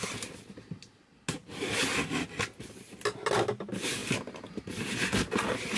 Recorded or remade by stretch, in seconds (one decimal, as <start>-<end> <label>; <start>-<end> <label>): 0.0-5.8 recorded